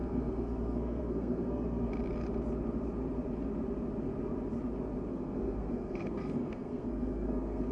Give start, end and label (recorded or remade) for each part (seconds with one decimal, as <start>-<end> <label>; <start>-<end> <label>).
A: 0.0-1.9 remade; 1.9-5.1 recorded; 5.1-7.7 remade